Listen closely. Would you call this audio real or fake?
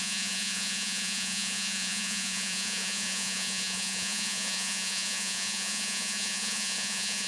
fake